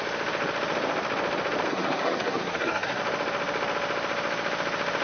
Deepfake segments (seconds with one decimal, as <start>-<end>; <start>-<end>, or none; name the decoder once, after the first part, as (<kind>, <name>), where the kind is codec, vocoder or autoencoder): 1.7-3.0 (codec, SNAC)